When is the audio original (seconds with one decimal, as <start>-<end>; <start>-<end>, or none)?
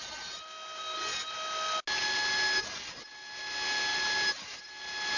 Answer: 0.0-3.9; 4.8-5.2